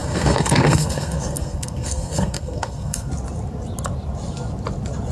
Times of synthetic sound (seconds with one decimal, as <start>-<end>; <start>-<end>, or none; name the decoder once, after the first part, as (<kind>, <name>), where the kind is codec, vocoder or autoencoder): 0.0-3.1 (codec, SNAC)